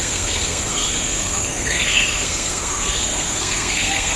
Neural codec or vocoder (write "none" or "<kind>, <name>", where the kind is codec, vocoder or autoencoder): codec, SNAC